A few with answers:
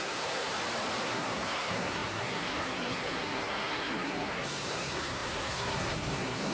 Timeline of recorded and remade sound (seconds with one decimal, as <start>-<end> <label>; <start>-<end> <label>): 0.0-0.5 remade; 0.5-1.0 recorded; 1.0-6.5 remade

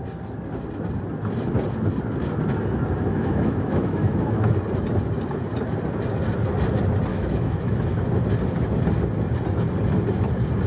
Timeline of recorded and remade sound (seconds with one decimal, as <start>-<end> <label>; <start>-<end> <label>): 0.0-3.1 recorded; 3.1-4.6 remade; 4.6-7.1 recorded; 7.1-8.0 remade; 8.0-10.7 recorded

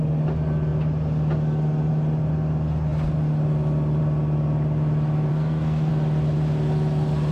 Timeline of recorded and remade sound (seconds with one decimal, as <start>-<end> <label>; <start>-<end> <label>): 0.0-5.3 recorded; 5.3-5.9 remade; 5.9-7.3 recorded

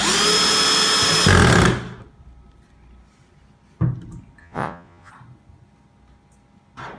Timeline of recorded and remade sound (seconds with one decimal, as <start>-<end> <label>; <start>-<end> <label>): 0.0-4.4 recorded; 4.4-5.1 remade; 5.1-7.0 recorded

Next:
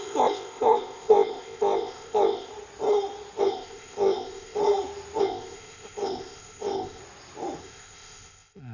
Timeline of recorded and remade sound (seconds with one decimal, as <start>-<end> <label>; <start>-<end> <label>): 0.0-2.5 remade; 2.5-3.4 recorded; 3.4-4.6 remade; 4.6-5.2 recorded; 5.2-7.0 remade; 7.0-7.6 recorded; 7.6-8.7 remade

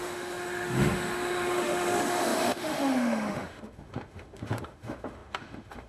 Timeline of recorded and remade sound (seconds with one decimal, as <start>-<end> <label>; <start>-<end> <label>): 0.0-5.9 remade

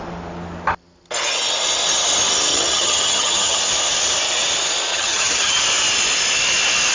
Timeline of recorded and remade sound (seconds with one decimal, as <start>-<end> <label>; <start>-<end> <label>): 0.0-2.5 recorded; 2.5-3.6 remade; 3.6-4.9 recorded; 4.9-5.6 remade; 5.6-6.9 recorded